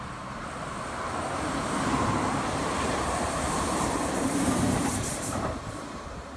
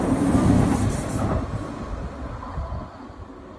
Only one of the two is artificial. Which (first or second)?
first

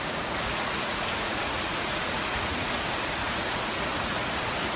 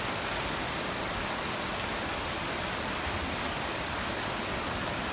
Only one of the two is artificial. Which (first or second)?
first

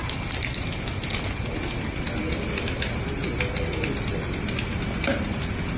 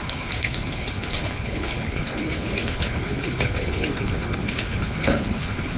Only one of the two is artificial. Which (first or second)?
second